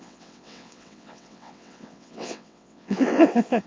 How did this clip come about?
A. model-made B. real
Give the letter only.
A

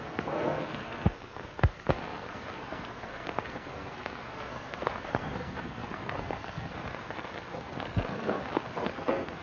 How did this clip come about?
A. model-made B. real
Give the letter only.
A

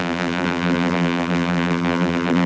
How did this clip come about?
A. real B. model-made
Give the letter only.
B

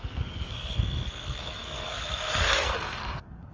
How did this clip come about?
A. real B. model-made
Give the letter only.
B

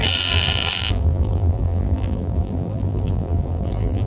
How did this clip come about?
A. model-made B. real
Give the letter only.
A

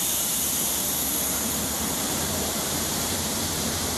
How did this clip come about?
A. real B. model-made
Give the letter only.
B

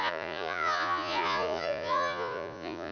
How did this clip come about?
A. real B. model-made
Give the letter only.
B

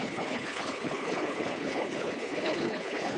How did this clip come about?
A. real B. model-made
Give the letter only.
B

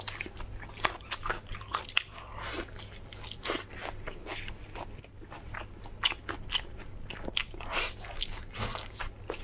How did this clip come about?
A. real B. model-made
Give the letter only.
A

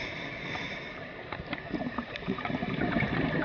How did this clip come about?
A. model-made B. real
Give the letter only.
A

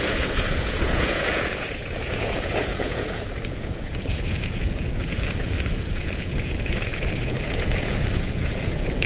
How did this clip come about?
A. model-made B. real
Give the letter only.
A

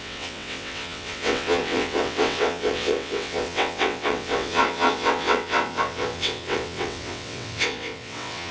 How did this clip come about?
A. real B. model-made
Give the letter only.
B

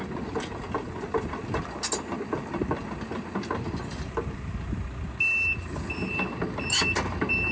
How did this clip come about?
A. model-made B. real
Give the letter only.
B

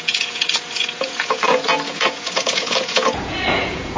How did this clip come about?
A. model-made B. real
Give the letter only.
A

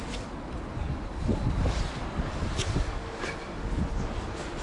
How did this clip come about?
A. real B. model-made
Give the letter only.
A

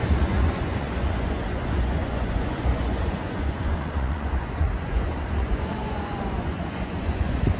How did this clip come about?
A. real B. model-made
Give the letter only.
B